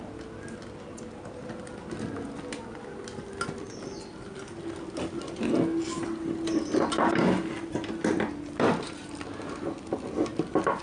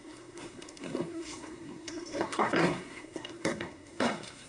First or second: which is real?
first